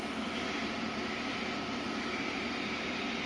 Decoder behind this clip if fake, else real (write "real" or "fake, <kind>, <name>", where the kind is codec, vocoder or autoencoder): fake, vocoder, BigVGAN v2